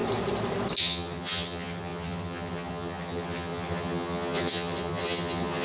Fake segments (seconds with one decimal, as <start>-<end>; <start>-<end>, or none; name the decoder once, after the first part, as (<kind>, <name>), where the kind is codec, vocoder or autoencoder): 0.8-5.6 (vocoder, HiFi-GAN)